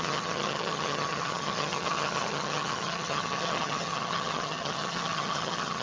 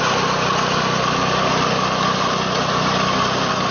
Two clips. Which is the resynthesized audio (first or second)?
first